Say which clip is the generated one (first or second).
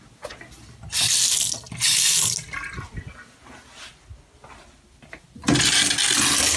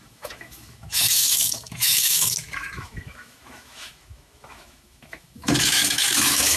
second